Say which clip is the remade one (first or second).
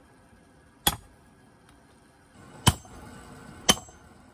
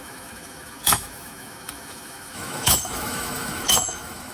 second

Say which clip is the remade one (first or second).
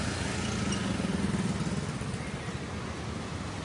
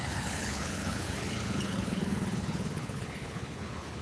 second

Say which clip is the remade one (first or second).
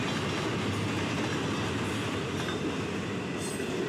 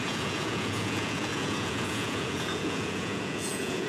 second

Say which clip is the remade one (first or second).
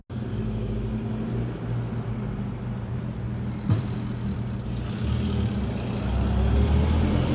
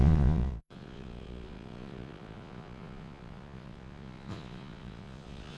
second